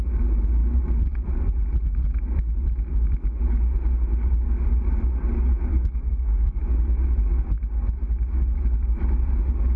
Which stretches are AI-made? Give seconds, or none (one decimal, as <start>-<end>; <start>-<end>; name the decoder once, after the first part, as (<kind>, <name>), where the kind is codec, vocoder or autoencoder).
5.7-6.6 (codec, SNAC)